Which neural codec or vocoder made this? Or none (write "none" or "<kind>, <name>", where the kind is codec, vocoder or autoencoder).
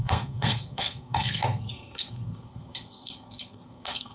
codec, SNAC